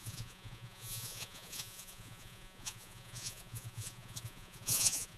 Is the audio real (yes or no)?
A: no